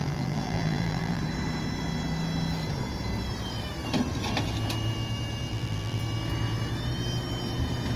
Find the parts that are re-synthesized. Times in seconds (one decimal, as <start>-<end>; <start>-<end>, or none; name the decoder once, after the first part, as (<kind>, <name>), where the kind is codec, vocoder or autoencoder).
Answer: 0.0-1.2 (vocoder, BigVGAN v2); 5.5-6.0